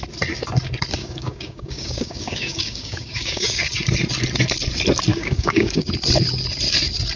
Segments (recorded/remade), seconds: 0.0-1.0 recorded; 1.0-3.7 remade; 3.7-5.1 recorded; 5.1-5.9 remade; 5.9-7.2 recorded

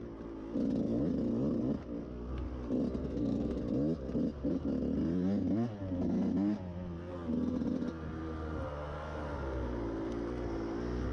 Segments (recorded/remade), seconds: 0.0-3.0 recorded; 3.0-3.6 remade; 3.6-11.1 recorded

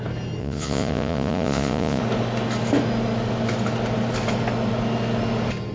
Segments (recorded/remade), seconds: 0.0-0.4 recorded; 0.4-2.0 remade; 2.0-5.7 recorded

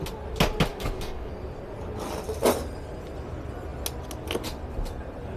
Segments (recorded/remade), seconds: 0.0-0.7 recorded; 0.7-1.3 remade; 1.3-5.4 recorded